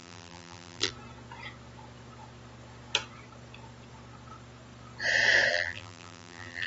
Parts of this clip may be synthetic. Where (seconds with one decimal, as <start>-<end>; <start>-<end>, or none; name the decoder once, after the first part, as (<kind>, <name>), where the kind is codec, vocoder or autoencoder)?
0.0-0.9 (vocoder, BigVGAN v2); 5.5-6.7